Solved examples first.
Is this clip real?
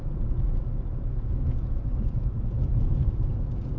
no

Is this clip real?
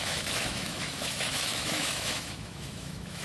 no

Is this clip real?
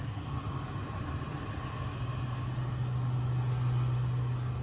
yes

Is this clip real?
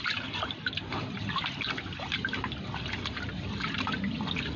yes